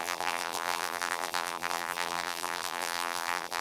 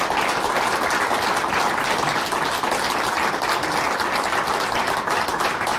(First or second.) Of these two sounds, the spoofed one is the first